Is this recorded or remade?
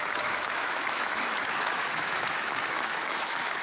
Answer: remade